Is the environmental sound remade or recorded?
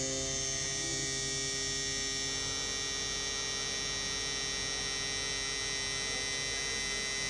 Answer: recorded